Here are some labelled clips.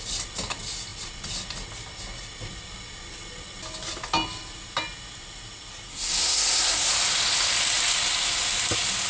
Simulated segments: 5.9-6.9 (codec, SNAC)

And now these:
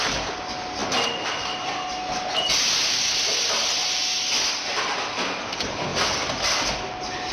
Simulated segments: none

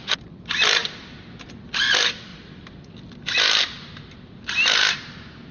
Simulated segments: none

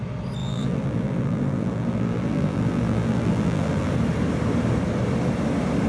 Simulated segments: 0.4-3.9 (vocoder, BigVGAN v2)